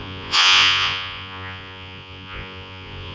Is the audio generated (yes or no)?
yes